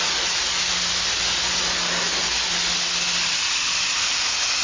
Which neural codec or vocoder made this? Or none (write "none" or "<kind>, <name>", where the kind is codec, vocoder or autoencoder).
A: none